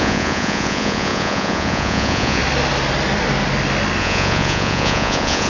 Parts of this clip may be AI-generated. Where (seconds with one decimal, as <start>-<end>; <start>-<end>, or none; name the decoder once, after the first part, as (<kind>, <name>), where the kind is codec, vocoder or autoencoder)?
0.0-2.4 (vocoder, Vocos); 4.0-5.5